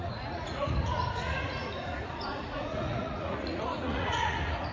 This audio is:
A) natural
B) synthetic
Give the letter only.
B